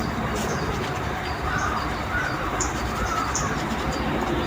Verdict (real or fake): fake